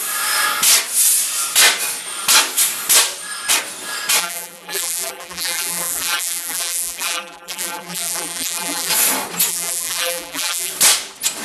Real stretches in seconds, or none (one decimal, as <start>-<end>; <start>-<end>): 0.0-4.2; 8.9-9.5; 10.7-11.4